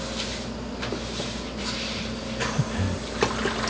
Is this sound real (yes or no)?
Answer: yes